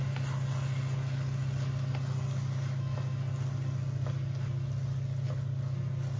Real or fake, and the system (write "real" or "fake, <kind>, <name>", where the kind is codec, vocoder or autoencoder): real